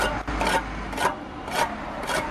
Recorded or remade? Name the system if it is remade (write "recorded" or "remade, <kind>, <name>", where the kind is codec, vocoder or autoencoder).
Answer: recorded